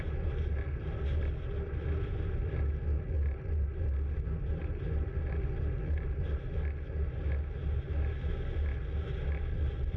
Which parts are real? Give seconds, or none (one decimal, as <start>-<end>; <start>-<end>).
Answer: 0.0-10.0